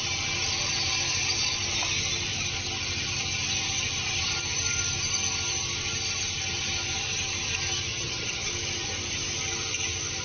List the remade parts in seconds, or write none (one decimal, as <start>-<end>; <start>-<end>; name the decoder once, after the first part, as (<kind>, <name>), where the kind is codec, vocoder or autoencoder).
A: 7.9-8.5 (vocoder, HiFi-GAN)